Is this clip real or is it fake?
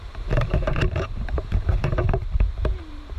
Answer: fake